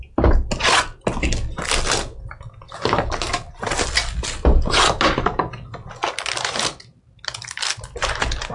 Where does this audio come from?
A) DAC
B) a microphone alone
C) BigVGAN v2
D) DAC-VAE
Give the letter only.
B